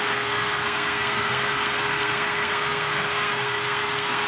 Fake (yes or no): yes